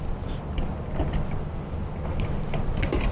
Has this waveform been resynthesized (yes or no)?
no